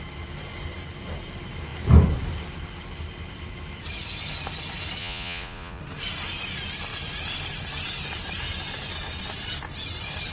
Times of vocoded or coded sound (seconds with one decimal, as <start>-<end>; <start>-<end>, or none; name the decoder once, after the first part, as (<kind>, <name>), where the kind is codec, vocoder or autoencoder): 5.0-5.8 (vocoder, Vocos)